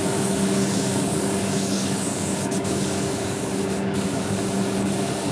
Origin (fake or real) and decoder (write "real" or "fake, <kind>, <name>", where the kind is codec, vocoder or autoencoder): fake, codec, DAC